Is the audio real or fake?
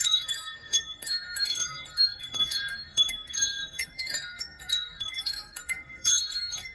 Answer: fake